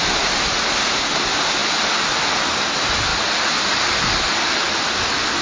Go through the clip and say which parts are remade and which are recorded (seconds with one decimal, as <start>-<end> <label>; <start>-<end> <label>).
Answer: 0.0-1.6 recorded; 1.6-2.3 remade; 2.3-5.4 recorded